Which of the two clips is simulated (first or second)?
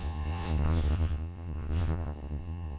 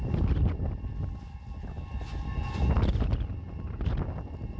first